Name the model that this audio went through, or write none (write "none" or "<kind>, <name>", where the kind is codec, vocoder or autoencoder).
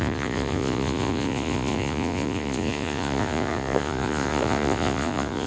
vocoder, Vocos